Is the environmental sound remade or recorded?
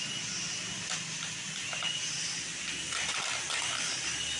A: recorded